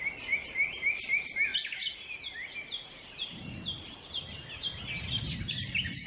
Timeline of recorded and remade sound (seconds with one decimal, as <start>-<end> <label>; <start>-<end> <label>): 0.0-6.1 recorded